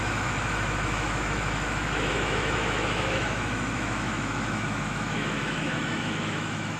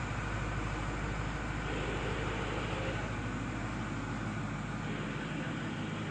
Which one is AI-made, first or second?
first